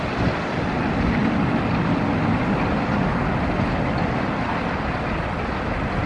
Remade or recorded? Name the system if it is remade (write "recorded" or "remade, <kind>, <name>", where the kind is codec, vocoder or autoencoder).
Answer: recorded